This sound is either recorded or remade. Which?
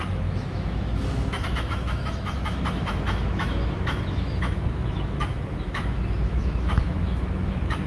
remade